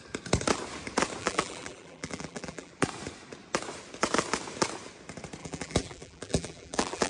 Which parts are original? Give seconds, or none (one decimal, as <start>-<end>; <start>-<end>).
0.0-1.2; 2.7-5.4